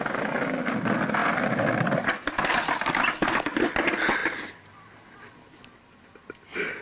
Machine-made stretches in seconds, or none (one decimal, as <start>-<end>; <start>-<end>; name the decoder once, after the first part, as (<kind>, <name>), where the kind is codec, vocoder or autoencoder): none